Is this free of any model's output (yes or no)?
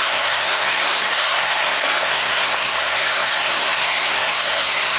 no